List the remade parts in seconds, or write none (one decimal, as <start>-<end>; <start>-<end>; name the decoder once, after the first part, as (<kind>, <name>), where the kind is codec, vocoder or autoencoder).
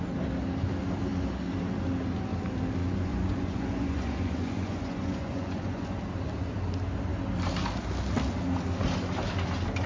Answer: 2.8-6.0 (vocoder, Vocos)